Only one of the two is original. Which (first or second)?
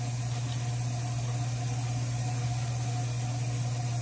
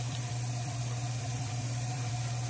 first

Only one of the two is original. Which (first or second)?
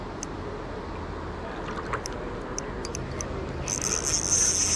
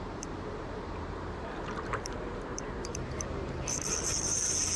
first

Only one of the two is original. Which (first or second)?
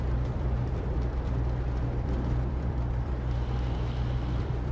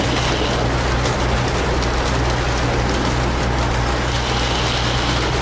second